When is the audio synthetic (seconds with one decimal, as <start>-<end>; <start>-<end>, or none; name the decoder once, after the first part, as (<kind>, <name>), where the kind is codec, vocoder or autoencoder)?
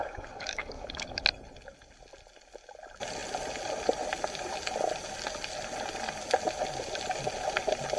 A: 0.0-1.2 (codec, DAC)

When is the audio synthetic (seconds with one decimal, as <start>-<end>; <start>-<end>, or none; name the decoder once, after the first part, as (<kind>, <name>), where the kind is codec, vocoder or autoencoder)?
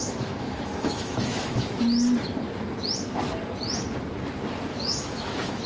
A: 0.0-1.8 (autoencoder, DAC-VAE); 4.7-5.7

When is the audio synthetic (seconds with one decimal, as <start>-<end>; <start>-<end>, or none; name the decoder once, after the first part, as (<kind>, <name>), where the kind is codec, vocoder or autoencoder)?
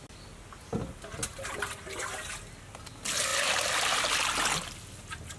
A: none